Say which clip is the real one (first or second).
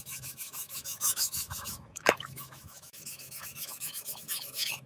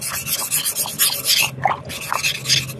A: second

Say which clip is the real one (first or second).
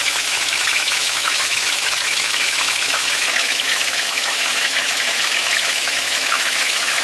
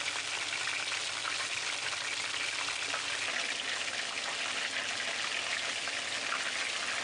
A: second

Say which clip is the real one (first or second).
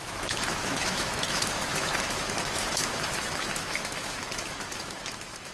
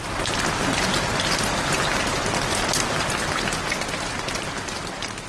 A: second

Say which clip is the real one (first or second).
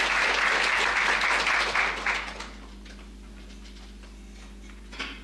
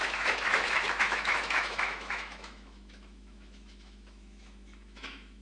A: first